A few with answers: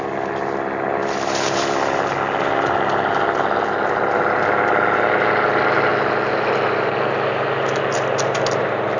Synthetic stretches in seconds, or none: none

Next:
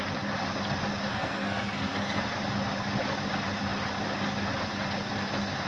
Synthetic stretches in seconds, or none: 1.1-2.2 (codec, SNAC)

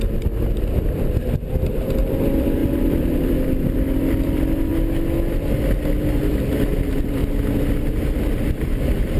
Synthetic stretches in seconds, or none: 0.0-4.7 (vocoder, BigVGAN v2); 6.3-7.2; 8.5-9.2

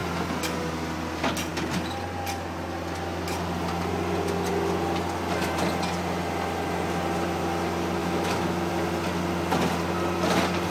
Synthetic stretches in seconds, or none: 8.0-8.7 (autoencoder, DAC-VAE)

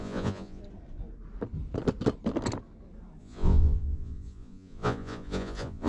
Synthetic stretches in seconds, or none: 0.0-0.6 (vocoder, Vocos); 3.2-5.9

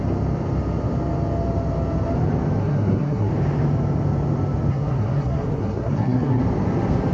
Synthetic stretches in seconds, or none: 2.6-3.3 (codec, SNAC); 4.7-6.4